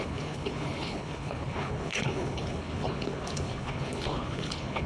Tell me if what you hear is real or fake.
fake